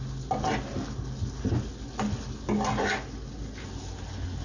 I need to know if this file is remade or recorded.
recorded